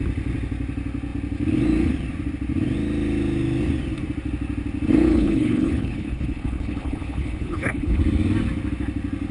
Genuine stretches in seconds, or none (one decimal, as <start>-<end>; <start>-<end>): 0.0-5.1; 8.0-9.3